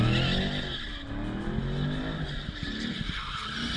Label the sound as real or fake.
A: real